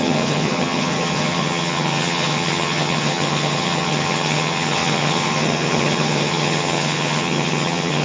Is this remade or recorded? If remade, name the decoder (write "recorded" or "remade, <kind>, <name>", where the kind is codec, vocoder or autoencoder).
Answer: remade, vocoder, HiFi-GAN